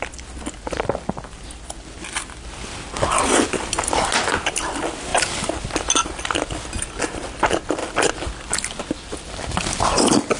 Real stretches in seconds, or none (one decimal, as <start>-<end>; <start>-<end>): 0.0-10.4